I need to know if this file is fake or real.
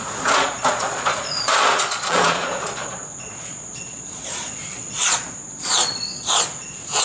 fake